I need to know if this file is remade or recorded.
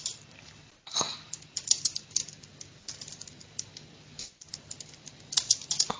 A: recorded